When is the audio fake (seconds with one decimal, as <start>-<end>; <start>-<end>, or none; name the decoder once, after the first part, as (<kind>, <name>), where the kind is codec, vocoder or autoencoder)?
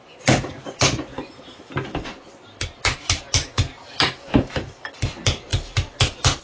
none